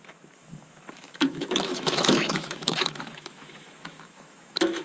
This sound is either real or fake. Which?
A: fake